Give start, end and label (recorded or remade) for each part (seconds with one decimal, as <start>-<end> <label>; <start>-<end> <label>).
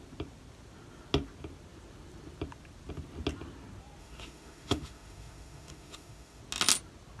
0.0-4.0 recorded; 4.0-6.4 remade; 6.4-7.2 recorded